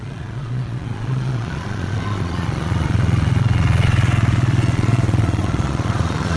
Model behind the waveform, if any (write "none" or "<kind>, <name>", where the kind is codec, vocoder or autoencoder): vocoder, Vocos